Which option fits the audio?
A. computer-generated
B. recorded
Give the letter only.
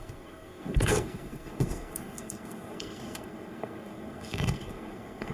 A